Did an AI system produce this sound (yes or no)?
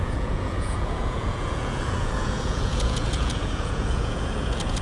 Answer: yes